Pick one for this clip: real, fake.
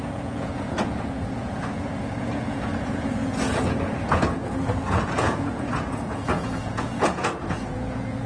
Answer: fake